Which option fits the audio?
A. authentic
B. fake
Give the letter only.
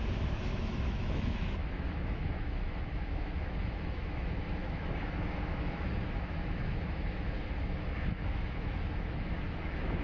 B